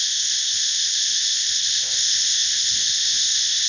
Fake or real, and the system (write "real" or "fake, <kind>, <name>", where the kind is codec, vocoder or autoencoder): fake, codec, ZipCodec